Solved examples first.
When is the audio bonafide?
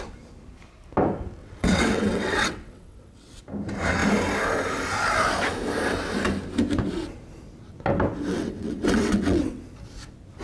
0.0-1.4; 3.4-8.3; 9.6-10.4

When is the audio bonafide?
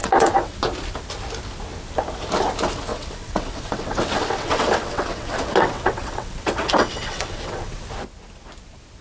0.6-2.9; 7.9-9.0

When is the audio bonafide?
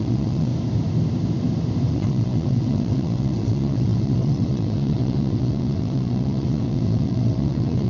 0.5-1.9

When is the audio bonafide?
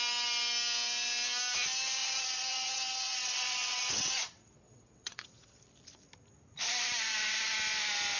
0.0-2.0; 5.6-8.2